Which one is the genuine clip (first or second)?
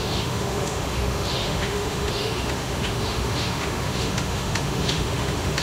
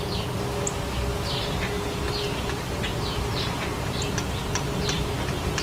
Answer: second